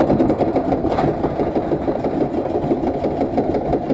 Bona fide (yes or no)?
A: yes